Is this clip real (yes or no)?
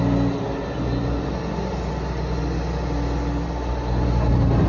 yes